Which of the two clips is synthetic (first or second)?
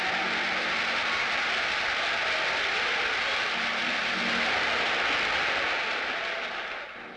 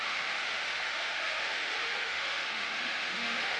second